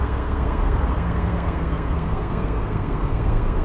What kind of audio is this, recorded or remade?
remade